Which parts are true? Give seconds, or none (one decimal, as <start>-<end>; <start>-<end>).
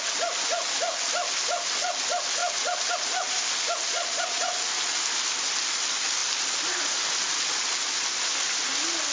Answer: 0.0-3.9; 4.5-9.1